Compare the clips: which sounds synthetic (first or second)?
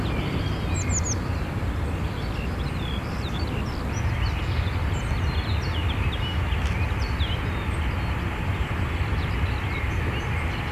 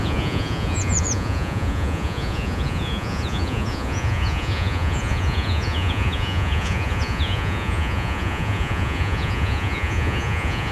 second